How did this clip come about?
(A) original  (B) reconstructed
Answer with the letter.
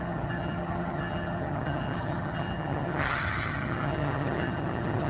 B